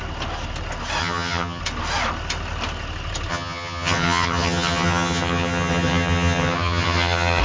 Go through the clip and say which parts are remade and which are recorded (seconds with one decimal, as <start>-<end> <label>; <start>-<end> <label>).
0.0-1.0 recorded; 1.0-1.6 remade; 1.6-3.3 recorded; 3.3-7.4 remade